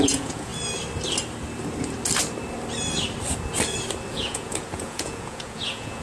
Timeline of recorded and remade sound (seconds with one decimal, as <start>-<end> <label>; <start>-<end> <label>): 0.0-0.5 remade; 0.5-4.1 recorded; 4.1-6.0 remade